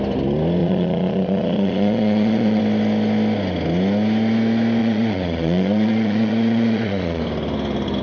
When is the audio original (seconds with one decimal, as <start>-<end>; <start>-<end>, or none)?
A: 0.0-0.6; 2.6-4.8; 7.2-8.0

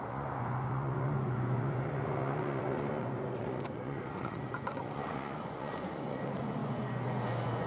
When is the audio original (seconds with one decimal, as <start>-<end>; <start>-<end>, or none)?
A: none

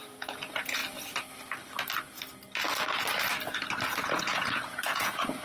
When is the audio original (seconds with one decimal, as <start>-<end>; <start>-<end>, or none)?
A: 0.8-4.0

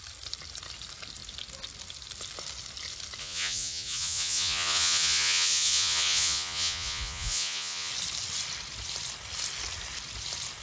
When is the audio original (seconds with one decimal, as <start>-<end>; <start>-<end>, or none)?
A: 0.0-3.2; 7.9-10.6

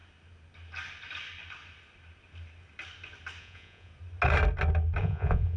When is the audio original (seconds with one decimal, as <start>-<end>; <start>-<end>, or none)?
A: 0.0-3.4; 3.9-5.0